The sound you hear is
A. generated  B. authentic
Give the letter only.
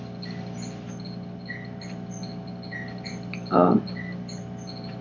B